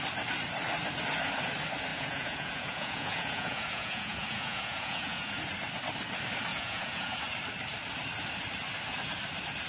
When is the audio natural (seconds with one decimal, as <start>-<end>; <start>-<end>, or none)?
0.0-1.9; 5.3-6.5; 7.2-9.7